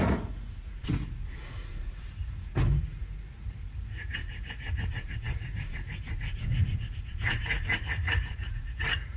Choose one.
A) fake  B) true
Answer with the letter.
A